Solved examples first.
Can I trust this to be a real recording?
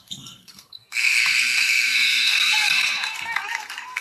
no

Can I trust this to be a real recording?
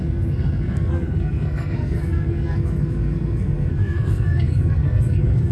no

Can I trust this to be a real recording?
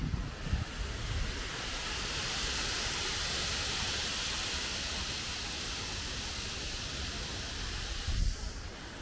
yes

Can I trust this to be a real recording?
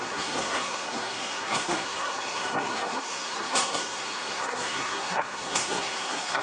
no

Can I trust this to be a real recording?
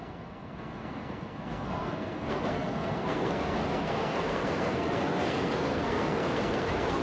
no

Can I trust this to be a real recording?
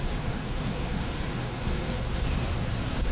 no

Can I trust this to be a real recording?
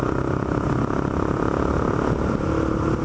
yes